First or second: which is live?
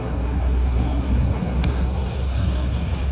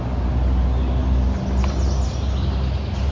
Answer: second